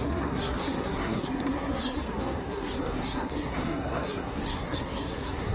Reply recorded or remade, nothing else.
remade